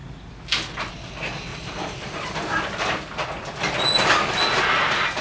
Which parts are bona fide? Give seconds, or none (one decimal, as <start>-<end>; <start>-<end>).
0.0-1.5; 2.7-5.2